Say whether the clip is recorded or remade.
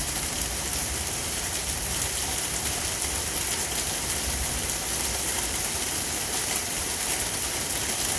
recorded